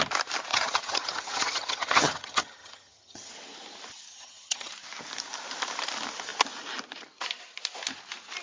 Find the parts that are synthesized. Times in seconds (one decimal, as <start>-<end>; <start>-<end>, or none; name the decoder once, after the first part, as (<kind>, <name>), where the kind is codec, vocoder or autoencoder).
0.5-3.3 (vocoder, HiFi-GAN); 4.1-4.7